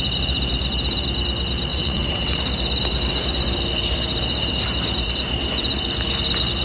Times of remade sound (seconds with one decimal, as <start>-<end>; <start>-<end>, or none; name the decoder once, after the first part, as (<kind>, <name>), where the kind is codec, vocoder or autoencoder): 1.7-2.4 (vocoder, WaveNeXt)